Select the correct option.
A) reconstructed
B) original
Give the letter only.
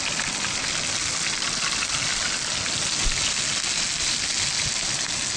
B